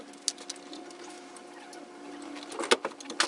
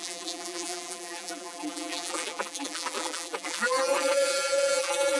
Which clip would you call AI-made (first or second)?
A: second